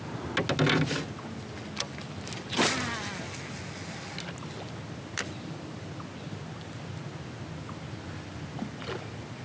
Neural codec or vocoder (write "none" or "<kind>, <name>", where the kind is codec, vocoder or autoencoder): none